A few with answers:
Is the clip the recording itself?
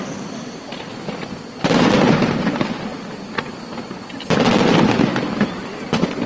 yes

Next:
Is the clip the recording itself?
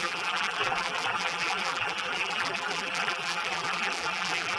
no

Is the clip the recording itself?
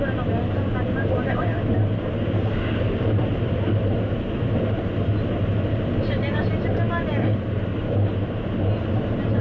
yes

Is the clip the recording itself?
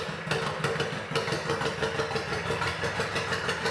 yes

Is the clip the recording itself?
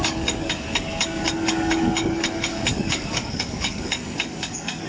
no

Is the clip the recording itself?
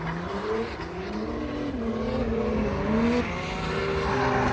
yes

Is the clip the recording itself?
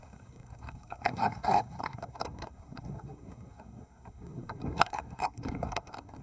no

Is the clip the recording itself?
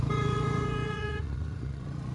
no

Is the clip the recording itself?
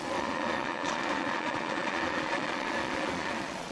no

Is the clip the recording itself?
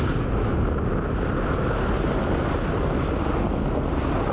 yes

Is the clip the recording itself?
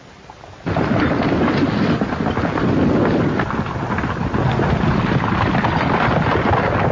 yes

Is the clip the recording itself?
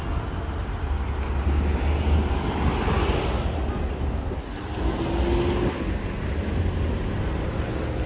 yes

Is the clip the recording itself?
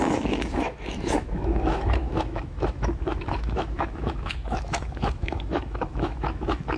no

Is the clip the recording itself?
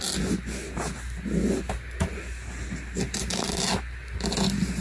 yes